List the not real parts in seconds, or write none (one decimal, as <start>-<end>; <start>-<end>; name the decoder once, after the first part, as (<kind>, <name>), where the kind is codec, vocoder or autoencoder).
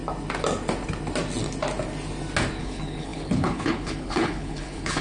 2.6-5.0 (codec, HILCodec)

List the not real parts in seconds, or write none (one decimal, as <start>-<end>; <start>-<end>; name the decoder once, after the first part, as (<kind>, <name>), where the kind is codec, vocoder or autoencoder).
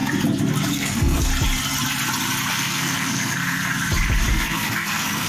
0.7-1.3 (codec, SNAC); 2.5-3.7; 4.3-5.3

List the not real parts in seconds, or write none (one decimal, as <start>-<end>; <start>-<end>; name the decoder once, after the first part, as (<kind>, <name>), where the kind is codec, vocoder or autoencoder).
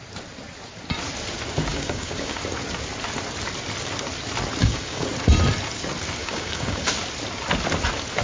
1.7-2.4 (codec, DAC); 4.6-5.1; 6.2-6.9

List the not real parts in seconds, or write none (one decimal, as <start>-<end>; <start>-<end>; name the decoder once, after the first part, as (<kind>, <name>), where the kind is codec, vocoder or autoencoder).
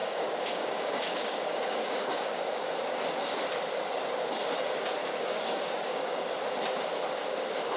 0.0-2.7 (codec, DAC); 5.0-6.3